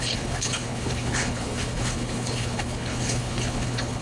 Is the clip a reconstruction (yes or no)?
yes